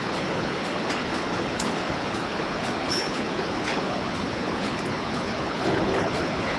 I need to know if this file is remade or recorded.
remade